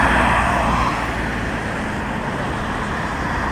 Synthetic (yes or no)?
no